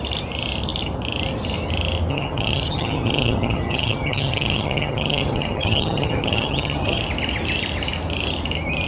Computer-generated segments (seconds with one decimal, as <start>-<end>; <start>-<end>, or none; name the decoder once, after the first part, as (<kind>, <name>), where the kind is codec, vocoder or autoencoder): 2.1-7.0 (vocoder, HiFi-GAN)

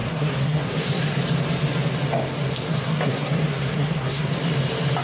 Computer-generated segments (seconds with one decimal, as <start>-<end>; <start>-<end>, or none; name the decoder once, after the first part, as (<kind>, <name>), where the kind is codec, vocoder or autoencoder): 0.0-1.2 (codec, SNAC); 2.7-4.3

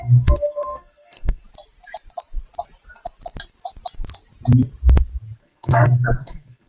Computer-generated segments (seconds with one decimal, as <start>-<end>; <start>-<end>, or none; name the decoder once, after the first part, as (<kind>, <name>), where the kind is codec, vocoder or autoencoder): 0.0-1.4 (codec, SNAC); 5.4-6.7